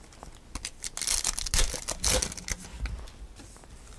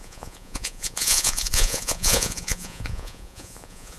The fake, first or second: second